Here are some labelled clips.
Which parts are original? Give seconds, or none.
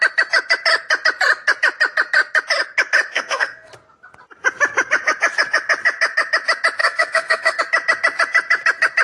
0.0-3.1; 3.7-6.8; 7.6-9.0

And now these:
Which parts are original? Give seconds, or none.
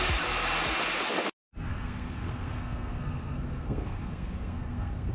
0.0-1.7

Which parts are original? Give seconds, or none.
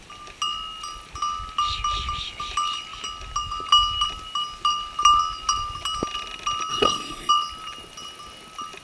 0.0-6.7; 7.3-8.8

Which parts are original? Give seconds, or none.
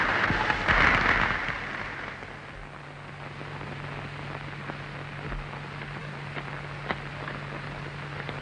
0.0-8.4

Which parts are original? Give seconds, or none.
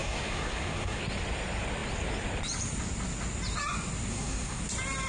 1.0-4.1; 4.6-5.1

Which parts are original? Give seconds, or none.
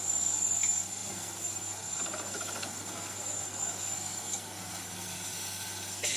none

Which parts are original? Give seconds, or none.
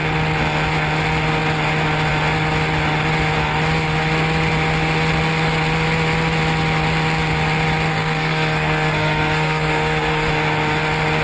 0.0-7.9; 10.3-11.2